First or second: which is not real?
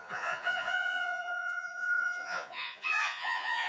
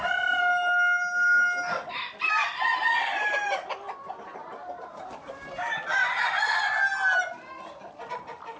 first